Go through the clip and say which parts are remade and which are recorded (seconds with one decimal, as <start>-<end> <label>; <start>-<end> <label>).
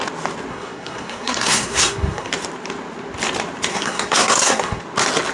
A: 0.0-0.5 recorded; 0.5-2.3 remade; 2.3-3.7 recorded; 3.7-4.8 remade; 4.8-5.3 recorded